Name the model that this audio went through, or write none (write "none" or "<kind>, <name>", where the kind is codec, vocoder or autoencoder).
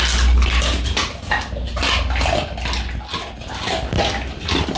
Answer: none